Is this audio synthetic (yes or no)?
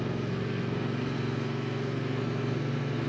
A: yes